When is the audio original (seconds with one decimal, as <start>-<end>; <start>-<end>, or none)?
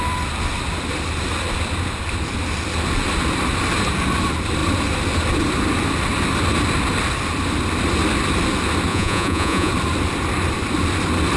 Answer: 0.0-8.9; 9.7-11.4